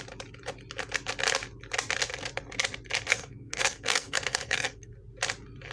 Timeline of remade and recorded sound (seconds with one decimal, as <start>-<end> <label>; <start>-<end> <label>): 0.0-3.1 recorded; 3.1-4.9 remade; 4.9-5.7 recorded